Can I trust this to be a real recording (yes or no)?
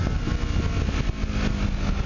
yes